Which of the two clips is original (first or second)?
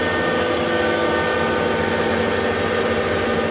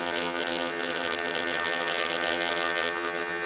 first